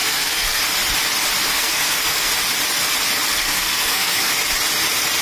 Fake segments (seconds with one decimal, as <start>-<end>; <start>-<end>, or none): 0.0-0.6; 1.5-2.3; 3.3-4.3